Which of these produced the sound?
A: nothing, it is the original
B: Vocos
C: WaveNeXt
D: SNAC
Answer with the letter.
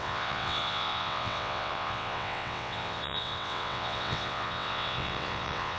C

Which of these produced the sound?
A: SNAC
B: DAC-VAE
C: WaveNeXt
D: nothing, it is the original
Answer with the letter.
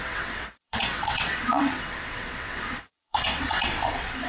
C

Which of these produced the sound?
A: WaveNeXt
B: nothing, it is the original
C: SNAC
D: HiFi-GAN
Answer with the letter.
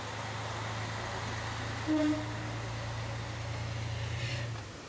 B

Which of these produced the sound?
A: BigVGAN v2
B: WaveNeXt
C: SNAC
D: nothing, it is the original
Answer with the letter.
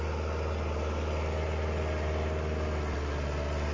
D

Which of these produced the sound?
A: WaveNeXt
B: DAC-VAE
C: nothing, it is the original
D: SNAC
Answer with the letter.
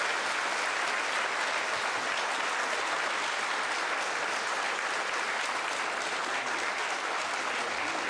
C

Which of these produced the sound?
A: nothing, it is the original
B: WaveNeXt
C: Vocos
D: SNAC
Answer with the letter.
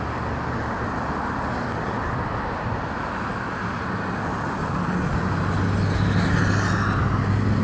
A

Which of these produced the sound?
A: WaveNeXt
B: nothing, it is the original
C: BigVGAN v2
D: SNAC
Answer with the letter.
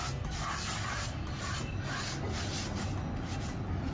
B